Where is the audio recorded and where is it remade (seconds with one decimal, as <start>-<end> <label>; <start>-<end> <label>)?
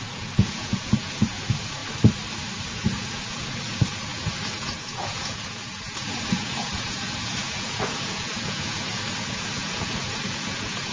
0.0-1.8 remade; 1.8-2.7 recorded; 2.7-10.9 remade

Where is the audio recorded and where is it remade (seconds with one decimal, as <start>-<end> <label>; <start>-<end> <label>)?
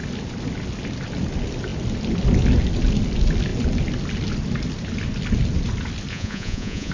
0.0-6.1 recorded; 6.1-6.9 remade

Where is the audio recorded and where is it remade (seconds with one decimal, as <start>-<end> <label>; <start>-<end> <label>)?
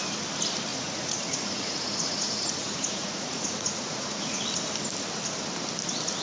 0.0-0.7 recorded; 0.7-4.4 remade; 4.4-6.2 recorded